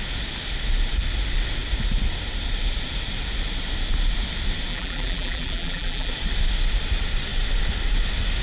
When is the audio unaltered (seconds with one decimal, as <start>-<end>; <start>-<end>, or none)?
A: 0.0-4.7; 6.1-8.4